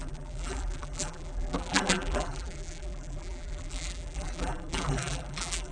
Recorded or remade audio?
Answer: remade